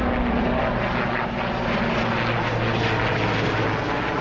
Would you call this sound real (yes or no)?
yes